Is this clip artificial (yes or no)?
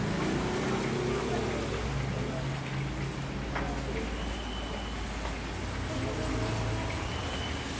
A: no